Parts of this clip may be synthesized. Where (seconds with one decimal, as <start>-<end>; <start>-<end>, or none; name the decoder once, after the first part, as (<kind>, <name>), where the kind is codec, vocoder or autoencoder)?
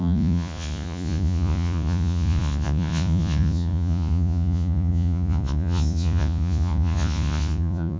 0.0-8.0 (vocoder, Vocos)